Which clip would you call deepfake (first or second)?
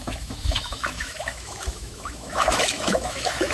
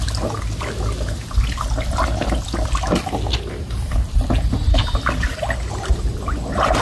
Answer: first